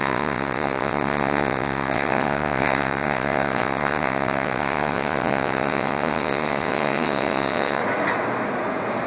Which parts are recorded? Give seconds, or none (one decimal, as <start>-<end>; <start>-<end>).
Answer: 7.8-9.1